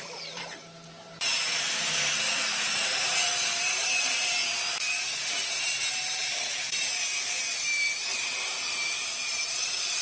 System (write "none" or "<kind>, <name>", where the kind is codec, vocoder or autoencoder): vocoder, BigVGAN v2